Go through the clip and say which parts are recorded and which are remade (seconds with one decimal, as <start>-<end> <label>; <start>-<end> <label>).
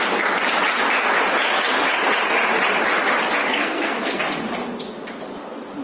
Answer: 0.0-3.4 recorded; 3.4-4.2 remade; 4.2-5.8 recorded